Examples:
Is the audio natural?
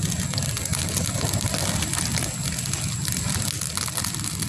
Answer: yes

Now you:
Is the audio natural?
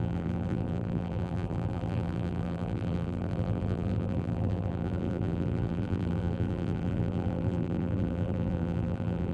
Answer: no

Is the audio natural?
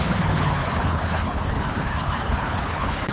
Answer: no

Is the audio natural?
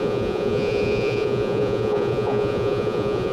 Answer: no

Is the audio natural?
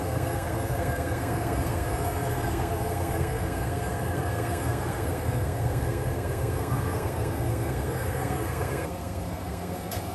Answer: no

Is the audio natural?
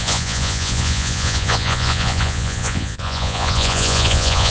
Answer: no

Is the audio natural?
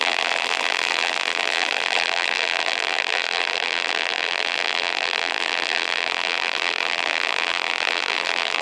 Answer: no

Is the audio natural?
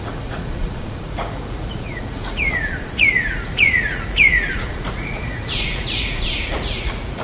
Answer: no